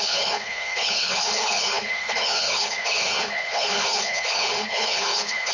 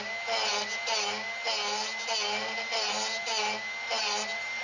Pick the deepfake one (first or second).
first